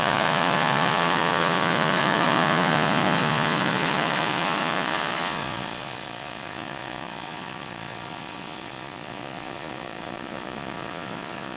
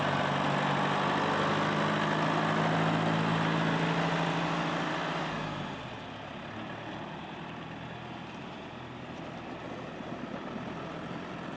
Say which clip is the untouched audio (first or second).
second